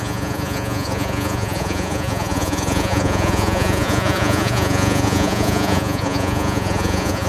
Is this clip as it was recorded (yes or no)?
no